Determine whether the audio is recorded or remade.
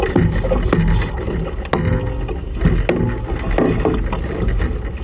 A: recorded